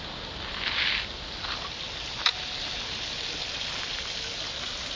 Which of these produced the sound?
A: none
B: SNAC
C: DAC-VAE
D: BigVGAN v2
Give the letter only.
A